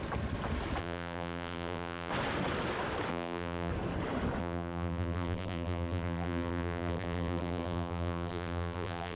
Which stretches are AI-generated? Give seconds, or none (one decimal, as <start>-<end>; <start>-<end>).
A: 0.8-2.1; 3.1-3.7; 4.4-9.2